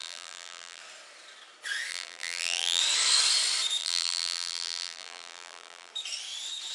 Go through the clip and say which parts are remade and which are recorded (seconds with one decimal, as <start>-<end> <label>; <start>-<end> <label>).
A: 0.0-0.8 remade; 0.8-1.9 recorded; 1.9-2.8 remade; 2.8-3.8 recorded; 3.8-5.9 remade; 5.9-6.7 recorded